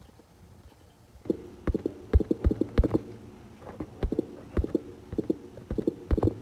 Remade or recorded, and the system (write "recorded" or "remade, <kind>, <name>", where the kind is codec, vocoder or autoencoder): recorded